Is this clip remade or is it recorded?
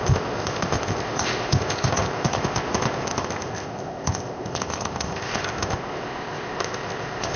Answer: remade